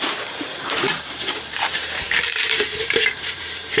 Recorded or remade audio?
remade